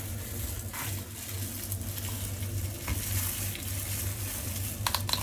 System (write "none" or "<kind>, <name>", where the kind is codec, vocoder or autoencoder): none